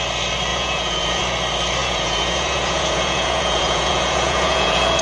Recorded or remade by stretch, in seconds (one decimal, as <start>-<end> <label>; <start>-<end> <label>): 0.0-0.5 recorded; 0.5-1.2 remade; 1.2-1.8 recorded; 1.8-5.0 remade